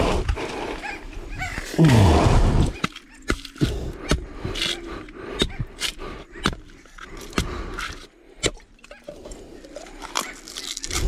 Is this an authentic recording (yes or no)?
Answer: yes